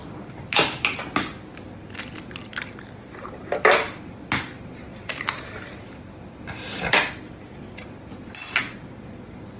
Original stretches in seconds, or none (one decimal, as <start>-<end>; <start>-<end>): 0.0-2.5; 4.2-4.9; 7.1-9.6